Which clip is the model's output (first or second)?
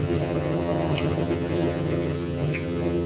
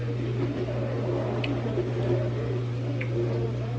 first